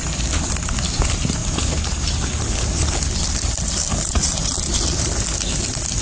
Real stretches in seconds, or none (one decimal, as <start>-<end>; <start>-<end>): 0.0-6.0